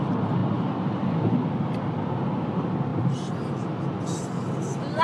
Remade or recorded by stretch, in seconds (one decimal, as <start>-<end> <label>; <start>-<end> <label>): 0.0-5.0 recorded